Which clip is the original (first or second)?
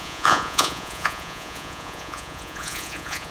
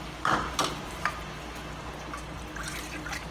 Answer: second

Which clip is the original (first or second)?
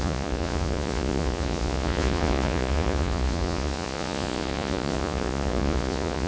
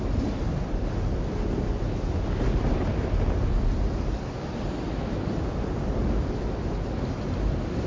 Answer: second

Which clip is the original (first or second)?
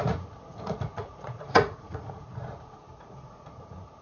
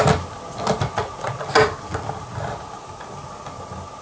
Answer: second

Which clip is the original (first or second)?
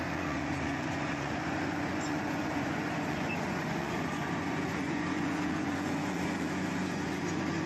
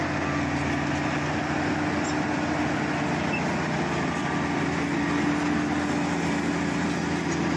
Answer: second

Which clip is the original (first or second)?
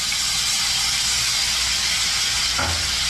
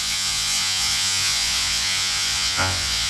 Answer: first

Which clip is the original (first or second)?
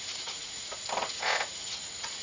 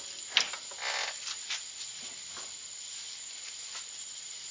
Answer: second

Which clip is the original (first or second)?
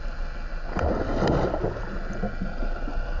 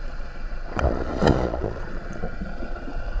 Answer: first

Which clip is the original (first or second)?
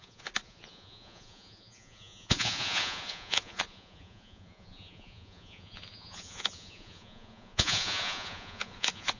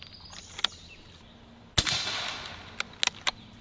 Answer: second